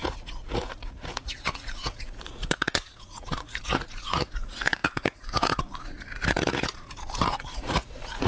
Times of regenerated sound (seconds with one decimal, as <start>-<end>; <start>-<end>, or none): 0.0-8.3